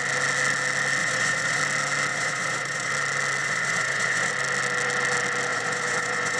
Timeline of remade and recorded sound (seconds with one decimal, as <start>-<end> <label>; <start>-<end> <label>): 0.0-1.0 recorded; 1.0-1.6 remade; 1.6-2.1 recorded; 2.1-2.9 remade; 2.9-3.4 recorded; 3.4-4.3 remade; 4.3-5.5 recorded; 5.5-6.4 remade